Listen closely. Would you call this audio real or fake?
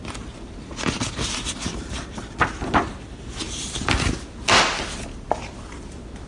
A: real